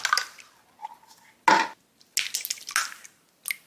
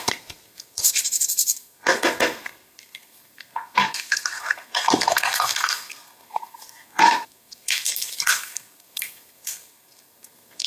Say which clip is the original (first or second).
first